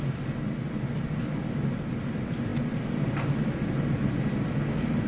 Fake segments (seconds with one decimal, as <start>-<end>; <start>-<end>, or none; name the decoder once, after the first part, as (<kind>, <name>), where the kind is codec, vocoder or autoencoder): none